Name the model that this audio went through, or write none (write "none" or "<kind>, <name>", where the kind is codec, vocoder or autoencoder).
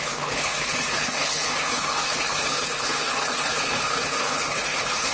codec, HILCodec